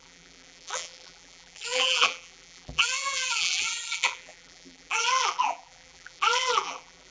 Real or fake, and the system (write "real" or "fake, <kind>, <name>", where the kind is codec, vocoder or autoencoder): fake, vocoder, BigVGAN v2